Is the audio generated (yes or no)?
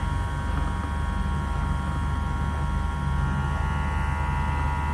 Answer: no